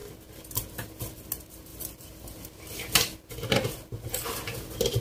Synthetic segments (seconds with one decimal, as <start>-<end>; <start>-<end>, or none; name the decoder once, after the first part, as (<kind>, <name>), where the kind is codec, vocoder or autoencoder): none